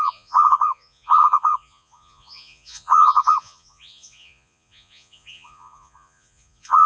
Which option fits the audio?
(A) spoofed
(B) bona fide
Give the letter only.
A